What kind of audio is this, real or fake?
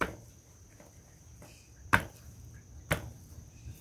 real